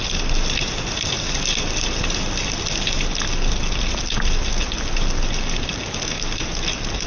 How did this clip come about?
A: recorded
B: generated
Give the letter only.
A